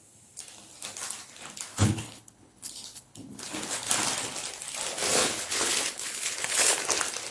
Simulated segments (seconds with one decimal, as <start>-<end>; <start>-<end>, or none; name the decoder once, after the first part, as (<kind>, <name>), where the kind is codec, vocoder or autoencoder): 1.7-3.9 (codec, HILCodec); 5.2-6.8